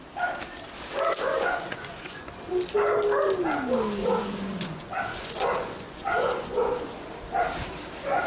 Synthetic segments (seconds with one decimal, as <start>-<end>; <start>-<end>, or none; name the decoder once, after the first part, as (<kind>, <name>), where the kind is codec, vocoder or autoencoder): 1.3-2.3 (vocoder, Vocos); 4.0-7.1

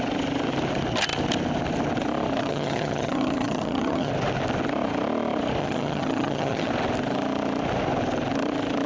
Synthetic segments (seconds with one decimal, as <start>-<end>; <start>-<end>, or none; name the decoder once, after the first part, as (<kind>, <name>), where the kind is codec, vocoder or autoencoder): 2.4-4.1 (vocoder, HiFi-GAN); 5.6-6.7